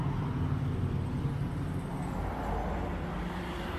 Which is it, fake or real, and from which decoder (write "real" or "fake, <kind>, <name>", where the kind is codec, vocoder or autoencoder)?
real